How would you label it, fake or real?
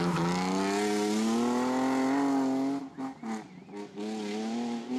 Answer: real